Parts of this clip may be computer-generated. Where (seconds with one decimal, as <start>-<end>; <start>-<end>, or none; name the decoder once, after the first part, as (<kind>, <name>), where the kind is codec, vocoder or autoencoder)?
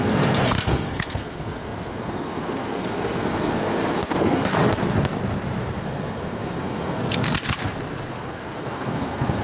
0.0-4.5 (codec, SNAC); 5.8-7.2; 8.1-9.4